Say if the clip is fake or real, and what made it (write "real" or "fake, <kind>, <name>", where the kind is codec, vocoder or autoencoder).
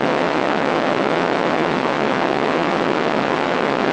fake, vocoder, WaveNeXt